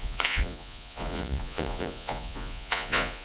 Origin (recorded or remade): remade